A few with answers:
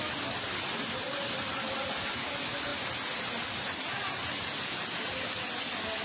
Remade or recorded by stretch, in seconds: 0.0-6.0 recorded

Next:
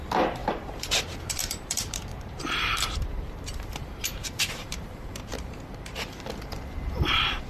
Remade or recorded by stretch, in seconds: 0.0-7.5 remade

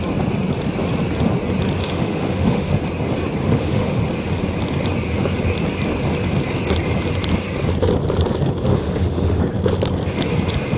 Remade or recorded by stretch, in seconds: 0.0-1.8 recorded; 1.8-2.7 remade; 2.7-3.4 recorded; 3.4-4.0 remade; 4.0-8.7 recorded; 8.7-9.4 remade; 9.4-10.8 recorded